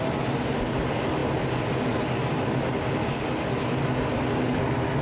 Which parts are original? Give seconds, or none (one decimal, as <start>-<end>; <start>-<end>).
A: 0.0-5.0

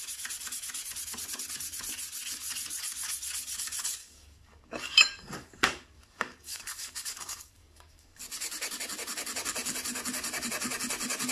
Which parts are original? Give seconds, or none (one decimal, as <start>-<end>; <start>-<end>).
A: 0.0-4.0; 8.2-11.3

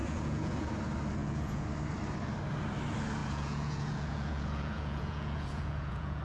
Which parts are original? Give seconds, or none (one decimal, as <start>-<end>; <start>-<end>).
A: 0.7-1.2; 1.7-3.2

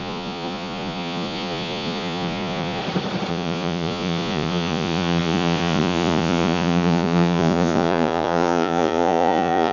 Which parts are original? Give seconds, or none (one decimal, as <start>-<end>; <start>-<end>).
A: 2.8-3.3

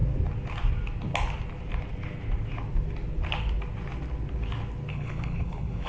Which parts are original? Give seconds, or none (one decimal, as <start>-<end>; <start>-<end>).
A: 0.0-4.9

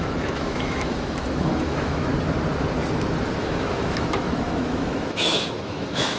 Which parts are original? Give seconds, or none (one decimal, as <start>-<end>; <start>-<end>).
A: 2.1-3.4

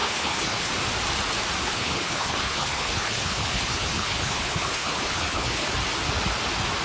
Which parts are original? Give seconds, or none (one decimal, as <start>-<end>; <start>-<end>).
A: 0.7-1.6; 5.7-6.8